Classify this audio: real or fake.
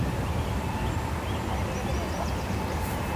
real